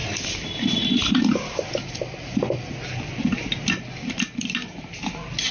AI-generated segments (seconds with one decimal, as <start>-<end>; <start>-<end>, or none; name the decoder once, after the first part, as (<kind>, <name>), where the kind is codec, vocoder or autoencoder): none